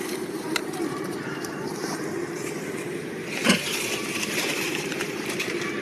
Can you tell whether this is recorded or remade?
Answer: remade